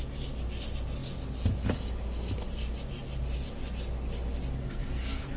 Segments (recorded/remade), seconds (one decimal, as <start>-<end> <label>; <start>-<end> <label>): 0.0-4.6 recorded; 4.6-5.4 remade